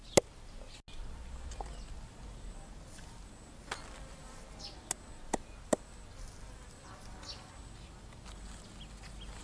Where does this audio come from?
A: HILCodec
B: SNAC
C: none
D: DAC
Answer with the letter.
C